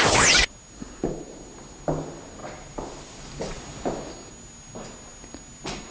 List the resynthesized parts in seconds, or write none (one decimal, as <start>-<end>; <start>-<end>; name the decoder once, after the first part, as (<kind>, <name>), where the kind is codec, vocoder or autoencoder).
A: none